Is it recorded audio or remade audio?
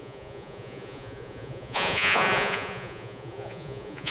remade